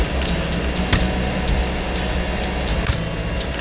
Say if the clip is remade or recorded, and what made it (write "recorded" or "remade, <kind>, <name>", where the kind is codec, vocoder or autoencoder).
recorded